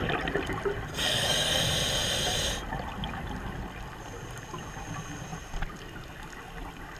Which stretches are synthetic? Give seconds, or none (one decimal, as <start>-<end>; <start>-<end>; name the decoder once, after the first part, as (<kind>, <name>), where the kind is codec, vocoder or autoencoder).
0.9-1.6 (codec, SNAC)